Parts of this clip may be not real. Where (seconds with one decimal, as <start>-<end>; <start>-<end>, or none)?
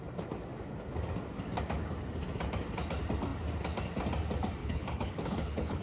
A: 4.6-5.8